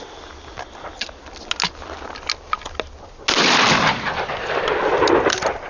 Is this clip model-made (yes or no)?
no